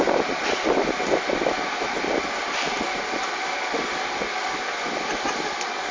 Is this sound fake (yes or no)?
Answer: no